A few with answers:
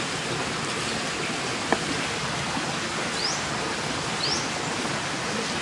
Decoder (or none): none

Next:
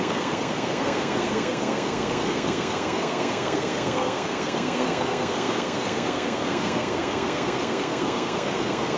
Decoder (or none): codec, SNAC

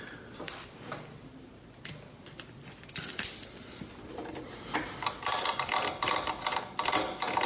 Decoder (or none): none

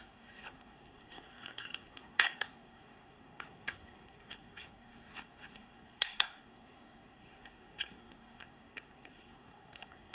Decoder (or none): codec, SNAC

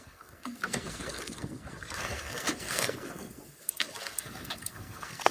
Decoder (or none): codec, SNAC